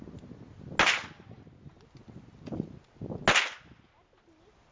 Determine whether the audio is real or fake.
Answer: real